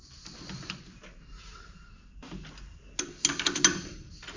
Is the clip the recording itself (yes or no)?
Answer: yes